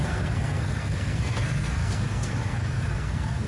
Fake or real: fake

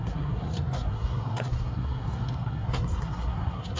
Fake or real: fake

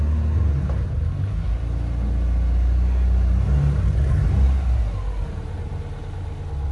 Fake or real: real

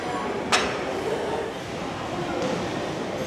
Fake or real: real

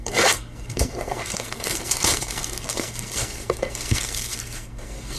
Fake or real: fake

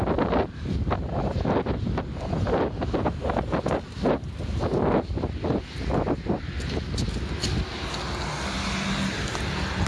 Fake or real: real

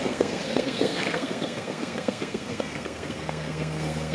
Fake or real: fake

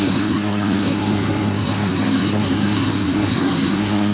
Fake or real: fake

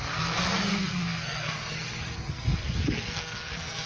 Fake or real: fake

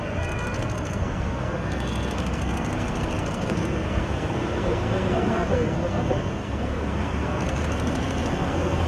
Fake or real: fake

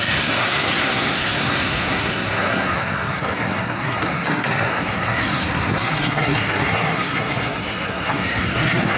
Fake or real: fake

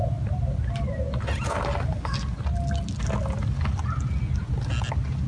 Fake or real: real